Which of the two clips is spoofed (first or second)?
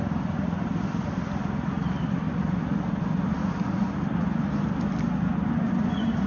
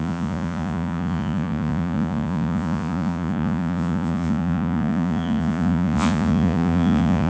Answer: second